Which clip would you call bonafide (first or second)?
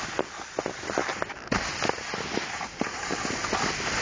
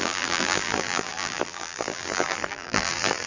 first